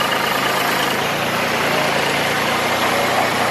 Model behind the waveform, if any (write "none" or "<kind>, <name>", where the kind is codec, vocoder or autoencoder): none